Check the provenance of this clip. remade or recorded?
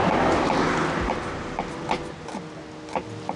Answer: recorded